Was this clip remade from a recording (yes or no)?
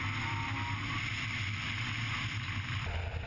no